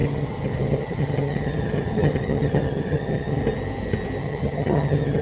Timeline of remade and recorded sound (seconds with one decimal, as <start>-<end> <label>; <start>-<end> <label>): 0.0-3.4 remade; 3.4-4.2 recorded; 4.2-5.2 remade